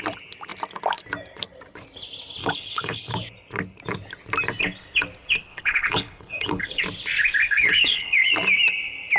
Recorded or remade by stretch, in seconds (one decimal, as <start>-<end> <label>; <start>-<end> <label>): 0.0-2.4 recorded; 2.4-3.1 remade; 3.1-5.5 recorded; 5.5-6.8 remade; 6.8-7.4 recorded; 7.4-8.3 remade; 8.3-9.2 recorded